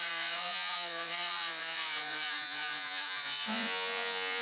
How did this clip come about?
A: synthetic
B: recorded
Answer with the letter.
A